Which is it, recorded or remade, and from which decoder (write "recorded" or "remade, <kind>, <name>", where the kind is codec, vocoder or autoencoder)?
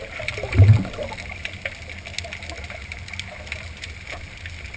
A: recorded